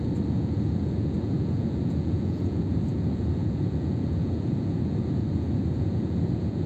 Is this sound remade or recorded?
remade